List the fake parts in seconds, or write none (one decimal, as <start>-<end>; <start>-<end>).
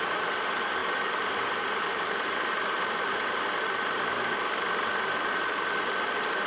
none